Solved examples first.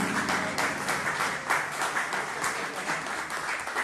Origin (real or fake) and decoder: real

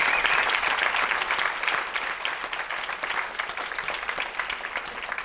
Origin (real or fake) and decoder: real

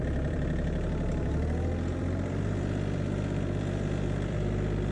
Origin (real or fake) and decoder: fake, vocoder, BigVGAN v2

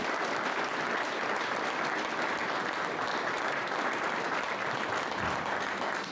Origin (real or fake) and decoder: fake, vocoder, BigVGAN v2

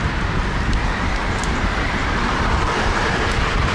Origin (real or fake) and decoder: fake, vocoder, BigVGAN v2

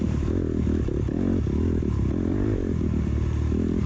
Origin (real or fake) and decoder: real